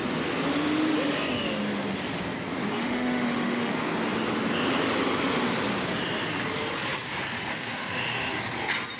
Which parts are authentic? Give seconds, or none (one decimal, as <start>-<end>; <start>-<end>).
0.0-2.7; 3.7-7.5; 8.4-9.0